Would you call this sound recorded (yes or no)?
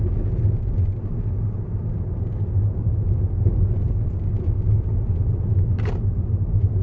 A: yes